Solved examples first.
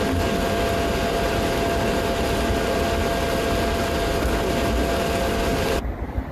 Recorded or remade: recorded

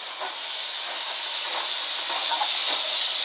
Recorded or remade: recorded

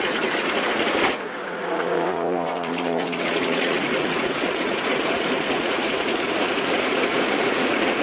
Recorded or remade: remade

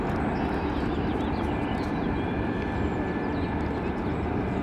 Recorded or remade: recorded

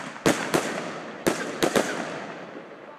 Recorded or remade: recorded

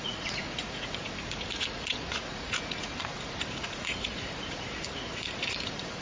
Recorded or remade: remade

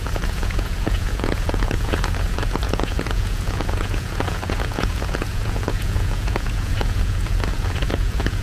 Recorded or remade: remade